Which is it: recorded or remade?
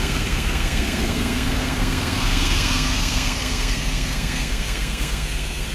remade